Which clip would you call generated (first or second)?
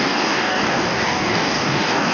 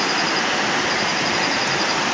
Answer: first